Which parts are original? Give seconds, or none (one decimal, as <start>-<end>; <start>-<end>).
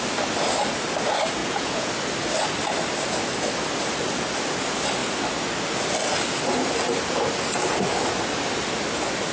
0.0-1.4; 1.9-9.3